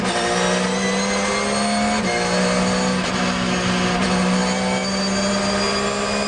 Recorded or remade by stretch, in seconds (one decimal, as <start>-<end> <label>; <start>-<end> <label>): 0.0-6.3 recorded

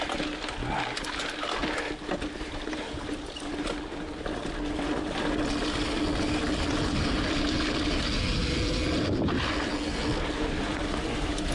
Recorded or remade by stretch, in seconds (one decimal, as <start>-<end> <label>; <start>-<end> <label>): 0.0-11.5 recorded

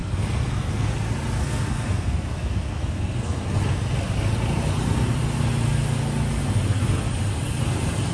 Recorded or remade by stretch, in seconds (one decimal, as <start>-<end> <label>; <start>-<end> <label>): 0.0-0.9 remade; 0.9-1.4 recorded; 1.4-3.6 remade; 3.6-8.1 recorded

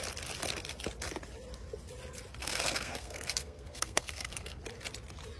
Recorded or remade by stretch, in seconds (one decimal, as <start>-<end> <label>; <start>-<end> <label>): 0.0-2.4 recorded; 2.4-4.6 remade; 4.6-5.4 recorded

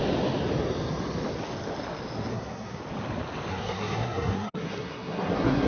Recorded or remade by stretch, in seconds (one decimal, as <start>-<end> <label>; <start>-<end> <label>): 0.0-2.3 recorded; 2.3-2.8 remade; 2.8-3.5 recorded; 3.5-5.7 remade

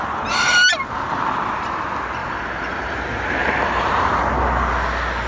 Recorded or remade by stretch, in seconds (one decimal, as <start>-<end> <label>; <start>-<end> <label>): 0.0-2.2 recorded; 2.2-3.0 remade; 3.0-3.4 recorded; 3.4-3.9 remade; 3.9-5.3 recorded